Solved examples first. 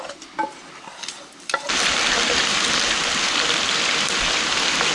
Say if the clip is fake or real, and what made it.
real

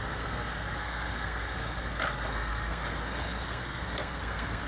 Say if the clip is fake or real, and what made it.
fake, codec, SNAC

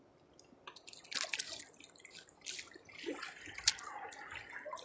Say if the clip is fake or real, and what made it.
real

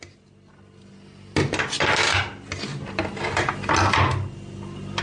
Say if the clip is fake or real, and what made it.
real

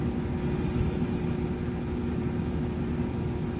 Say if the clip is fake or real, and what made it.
real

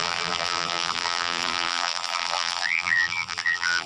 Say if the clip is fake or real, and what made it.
fake, vocoder, BigVGAN v2